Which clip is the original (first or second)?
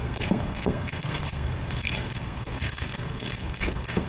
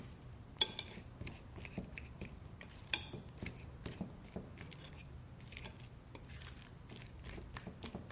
second